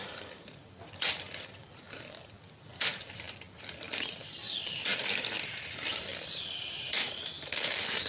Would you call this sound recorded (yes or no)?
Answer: no